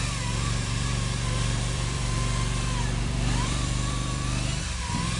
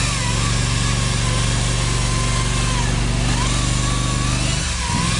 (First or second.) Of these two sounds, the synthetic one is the first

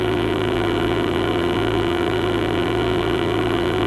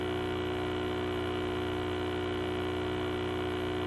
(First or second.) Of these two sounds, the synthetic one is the first